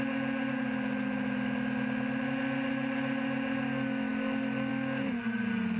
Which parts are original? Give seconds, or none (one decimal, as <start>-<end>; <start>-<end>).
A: 0.0-5.8